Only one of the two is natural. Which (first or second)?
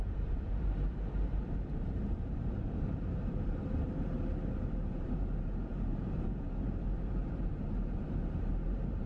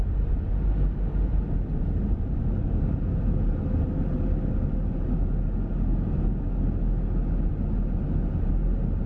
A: second